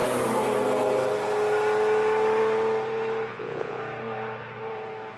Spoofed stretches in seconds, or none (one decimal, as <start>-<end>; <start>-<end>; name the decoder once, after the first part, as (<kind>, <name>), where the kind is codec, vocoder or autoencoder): 3.3-3.8 (vocoder, Vocos)